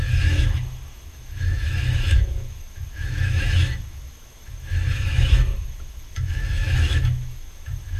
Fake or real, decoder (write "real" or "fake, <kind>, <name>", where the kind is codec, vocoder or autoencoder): fake, autoencoder, DAC-VAE